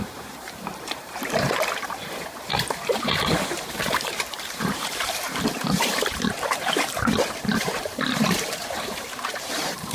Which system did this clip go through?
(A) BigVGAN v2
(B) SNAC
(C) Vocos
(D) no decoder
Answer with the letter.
A